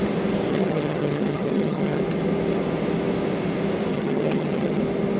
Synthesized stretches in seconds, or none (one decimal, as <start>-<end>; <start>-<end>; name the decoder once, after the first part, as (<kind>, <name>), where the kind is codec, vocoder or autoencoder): 0.5-2.0 (vocoder, HiFi-GAN); 3.9-4.8